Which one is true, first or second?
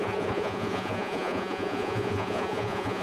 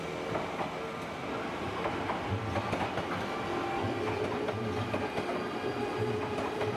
second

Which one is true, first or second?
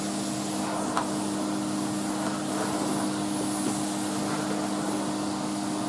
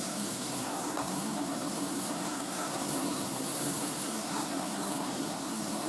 first